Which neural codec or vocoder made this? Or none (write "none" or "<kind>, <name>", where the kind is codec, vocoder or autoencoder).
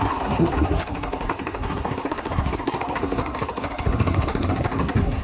codec, SNAC